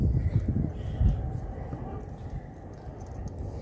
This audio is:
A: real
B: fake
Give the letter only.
A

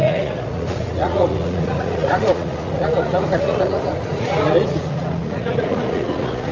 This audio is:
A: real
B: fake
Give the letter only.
B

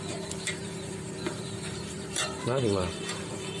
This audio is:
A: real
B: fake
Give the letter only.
B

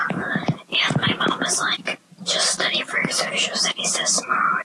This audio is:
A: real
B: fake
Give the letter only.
A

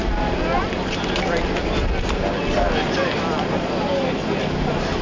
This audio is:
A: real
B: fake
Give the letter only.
A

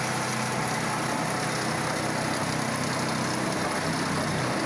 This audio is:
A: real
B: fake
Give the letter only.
A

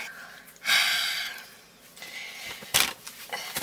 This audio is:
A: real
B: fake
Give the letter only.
A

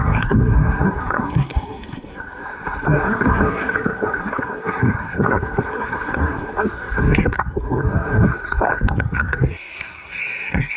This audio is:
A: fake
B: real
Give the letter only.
A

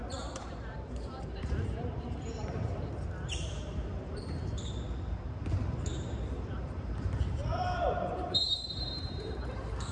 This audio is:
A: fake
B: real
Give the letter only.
A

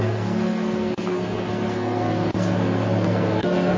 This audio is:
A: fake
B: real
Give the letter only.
A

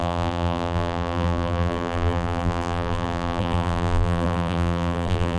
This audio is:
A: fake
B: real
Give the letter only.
A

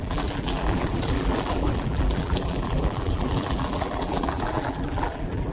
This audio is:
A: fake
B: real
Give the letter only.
A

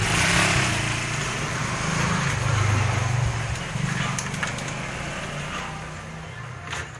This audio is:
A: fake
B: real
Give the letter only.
B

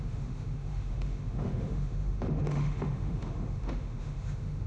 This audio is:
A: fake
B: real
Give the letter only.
A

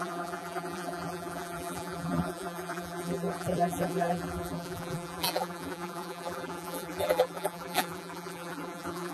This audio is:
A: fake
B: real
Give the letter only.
A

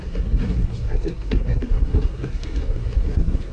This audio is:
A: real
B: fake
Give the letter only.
B